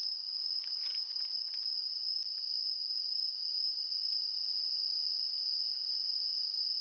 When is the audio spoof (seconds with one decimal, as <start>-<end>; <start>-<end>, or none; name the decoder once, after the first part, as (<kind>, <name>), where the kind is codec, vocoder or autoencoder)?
none